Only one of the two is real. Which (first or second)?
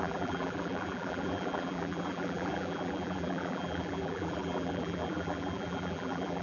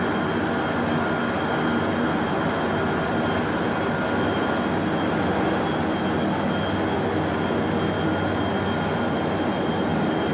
second